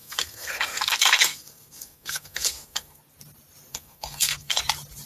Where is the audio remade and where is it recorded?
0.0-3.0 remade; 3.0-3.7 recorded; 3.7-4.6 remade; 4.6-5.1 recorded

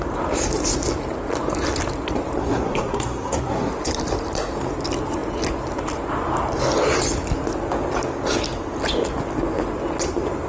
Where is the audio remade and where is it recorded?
0.0-2.4 recorded; 2.4-3.7 remade; 3.7-10.5 recorded

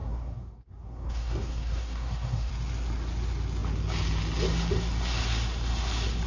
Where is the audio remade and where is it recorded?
0.0-2.5 remade; 2.5-6.3 recorded